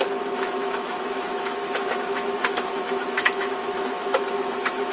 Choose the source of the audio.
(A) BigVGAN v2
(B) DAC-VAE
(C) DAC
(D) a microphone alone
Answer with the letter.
B